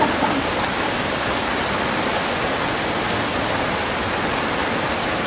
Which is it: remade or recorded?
recorded